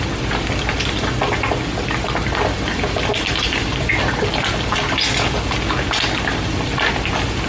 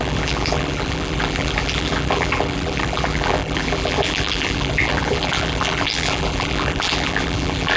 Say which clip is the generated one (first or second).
second